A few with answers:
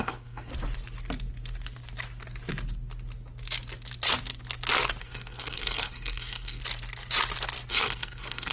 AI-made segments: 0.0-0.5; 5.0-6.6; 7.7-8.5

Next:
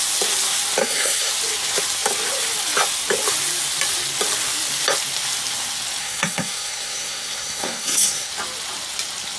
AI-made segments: 0.8-1.3; 6.0-8.3